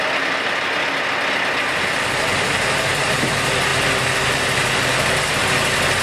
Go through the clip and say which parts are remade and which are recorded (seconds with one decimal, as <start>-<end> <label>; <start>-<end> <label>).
0.0-6.0 recorded